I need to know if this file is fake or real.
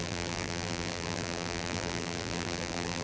fake